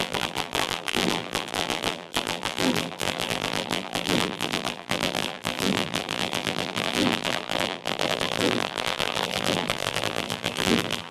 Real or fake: fake